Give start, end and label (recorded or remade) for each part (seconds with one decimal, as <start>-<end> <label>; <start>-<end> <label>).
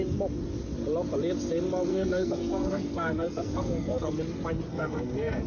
0.0-1.9 recorded; 1.9-4.2 remade; 4.2-4.7 recorded; 4.7-5.5 remade